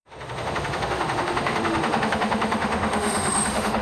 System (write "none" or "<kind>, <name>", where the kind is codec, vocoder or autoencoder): autoencoder, DAC-VAE